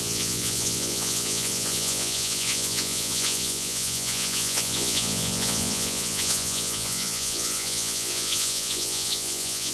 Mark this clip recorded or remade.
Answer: remade